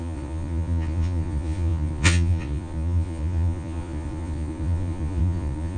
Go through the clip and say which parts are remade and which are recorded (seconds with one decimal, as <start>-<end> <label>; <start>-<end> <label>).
0.0-5.8 remade